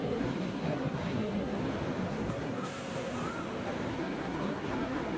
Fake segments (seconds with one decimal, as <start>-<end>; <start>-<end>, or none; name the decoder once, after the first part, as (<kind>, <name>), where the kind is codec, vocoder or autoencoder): 0.0-1.6 (codec, SNAC); 2.1-3.1; 3.9-5.2